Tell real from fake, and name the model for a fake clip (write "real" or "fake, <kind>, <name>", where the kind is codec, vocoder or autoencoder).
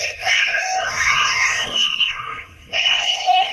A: fake, codec, SNAC